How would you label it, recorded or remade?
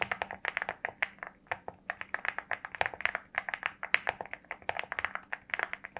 recorded